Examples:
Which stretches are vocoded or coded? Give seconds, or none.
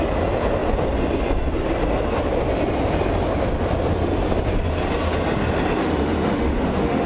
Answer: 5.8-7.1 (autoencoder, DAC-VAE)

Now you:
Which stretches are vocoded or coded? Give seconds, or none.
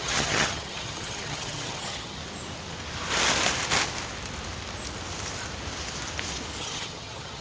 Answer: 0.0-2.2 (vocoder, HiFi-GAN); 6.6-7.4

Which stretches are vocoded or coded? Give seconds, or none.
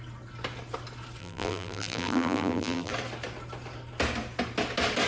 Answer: 1.2-2.9 (vocoder, BigVGAN v2)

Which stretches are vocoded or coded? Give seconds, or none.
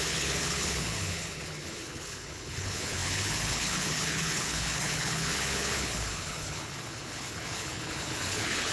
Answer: 0.0-8.7 (codec, HILCodec)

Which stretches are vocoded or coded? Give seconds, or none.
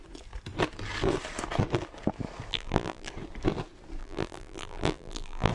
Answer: 2.5-3.1 (vocoder, BigVGAN v2); 4.0-5.5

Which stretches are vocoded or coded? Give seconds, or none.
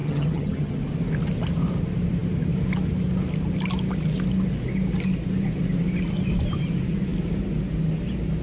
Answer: 0.0-0.8 (vocoder, HiFi-GAN)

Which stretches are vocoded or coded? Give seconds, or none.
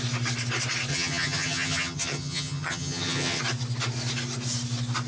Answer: 0.9-3.4 (vocoder, HiFi-GAN)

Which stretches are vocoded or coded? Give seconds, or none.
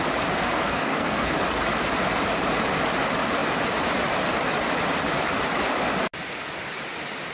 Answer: 0.4-1.3 (codec, SNAC)